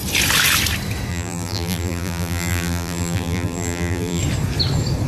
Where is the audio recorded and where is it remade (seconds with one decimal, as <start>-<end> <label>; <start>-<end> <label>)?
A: 0.0-1.1 recorded; 1.1-4.2 remade; 4.2-5.1 recorded